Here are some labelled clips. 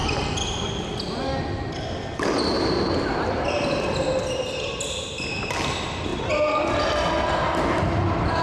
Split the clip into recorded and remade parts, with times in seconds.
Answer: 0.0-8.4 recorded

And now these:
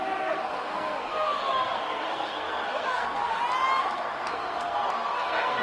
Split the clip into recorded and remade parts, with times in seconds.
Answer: 0.0-3.4 remade; 3.4-3.8 recorded; 3.8-5.6 remade